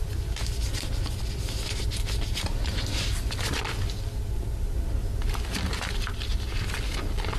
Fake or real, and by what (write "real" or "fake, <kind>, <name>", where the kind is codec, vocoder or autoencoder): real